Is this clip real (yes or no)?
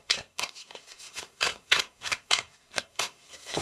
no